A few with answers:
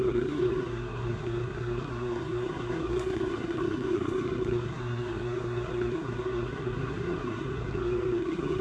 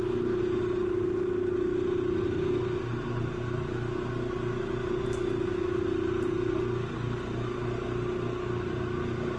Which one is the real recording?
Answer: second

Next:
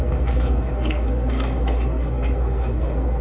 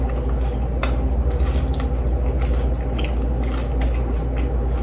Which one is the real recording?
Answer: second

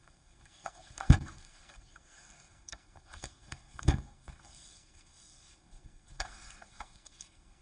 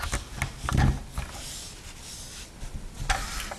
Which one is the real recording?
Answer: second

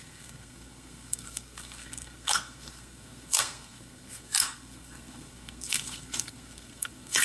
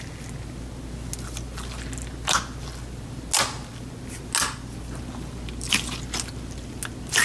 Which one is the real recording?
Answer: second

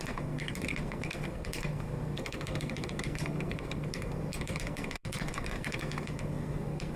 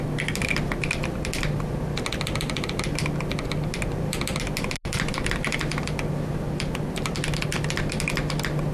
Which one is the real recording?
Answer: second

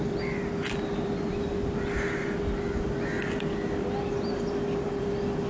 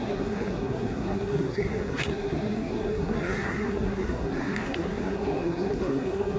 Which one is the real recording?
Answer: first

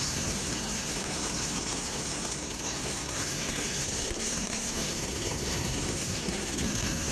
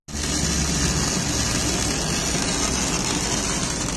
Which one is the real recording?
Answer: second